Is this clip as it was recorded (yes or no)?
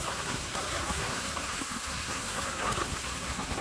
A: no